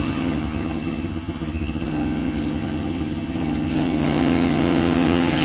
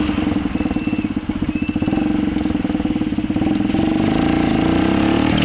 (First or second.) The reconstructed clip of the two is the first